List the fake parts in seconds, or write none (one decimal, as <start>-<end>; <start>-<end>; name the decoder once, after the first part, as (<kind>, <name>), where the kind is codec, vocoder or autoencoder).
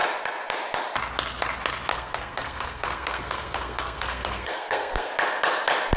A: 1.9-5.1 (codec, SNAC)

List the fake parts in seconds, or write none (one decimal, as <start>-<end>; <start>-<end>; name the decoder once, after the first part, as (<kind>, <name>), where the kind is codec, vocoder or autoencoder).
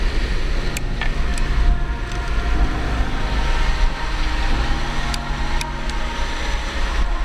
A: none